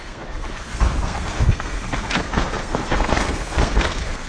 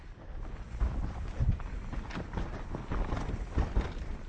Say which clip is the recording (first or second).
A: second